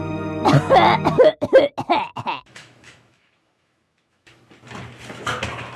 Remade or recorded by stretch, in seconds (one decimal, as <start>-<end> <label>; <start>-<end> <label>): 0.0-1.1 recorded; 1.1-1.6 remade; 1.6-2.1 recorded; 2.1-4.4 remade; 4.4-5.8 recorded